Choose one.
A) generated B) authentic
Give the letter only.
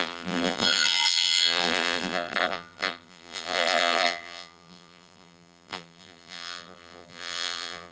A